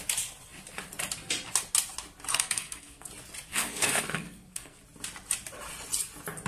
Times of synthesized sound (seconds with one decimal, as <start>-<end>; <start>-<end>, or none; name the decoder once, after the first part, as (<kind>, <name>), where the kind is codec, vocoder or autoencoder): 2.3-3.1 (codec, SNAC); 3.5-4.8